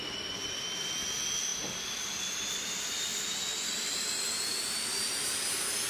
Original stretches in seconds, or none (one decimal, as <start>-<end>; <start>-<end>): 0.0-3.5; 5.4-5.9